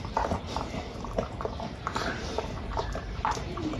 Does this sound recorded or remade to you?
remade